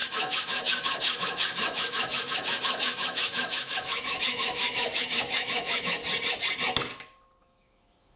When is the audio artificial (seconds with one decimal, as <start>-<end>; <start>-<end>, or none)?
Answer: 0.0-6.0; 7.4-8.2